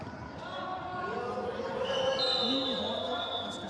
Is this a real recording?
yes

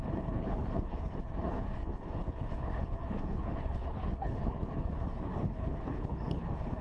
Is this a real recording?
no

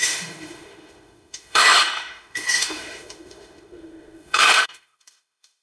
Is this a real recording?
no